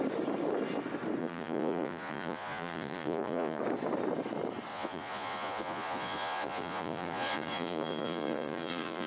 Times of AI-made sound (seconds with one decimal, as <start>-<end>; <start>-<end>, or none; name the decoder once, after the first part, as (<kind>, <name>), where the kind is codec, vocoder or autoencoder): 1.2-3.6 (vocoder, Vocos); 4.7-9.1